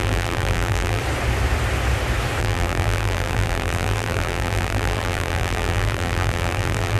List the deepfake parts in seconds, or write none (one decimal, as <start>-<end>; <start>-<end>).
0.0-1.0; 2.4-7.0